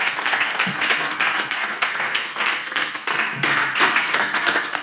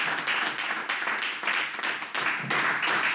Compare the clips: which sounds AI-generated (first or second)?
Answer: first